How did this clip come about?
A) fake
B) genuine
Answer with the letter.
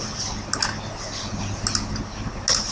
B